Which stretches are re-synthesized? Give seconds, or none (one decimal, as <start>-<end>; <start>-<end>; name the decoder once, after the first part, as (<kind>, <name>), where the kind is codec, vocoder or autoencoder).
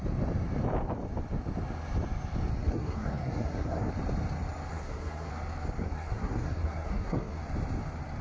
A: 2.6-3.9 (codec, SNAC); 4.7-5.3; 5.8-7.4